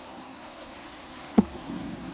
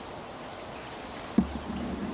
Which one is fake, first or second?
first